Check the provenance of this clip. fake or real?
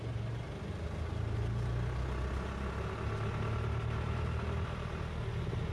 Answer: real